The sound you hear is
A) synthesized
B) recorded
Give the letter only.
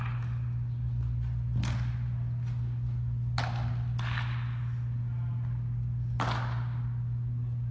B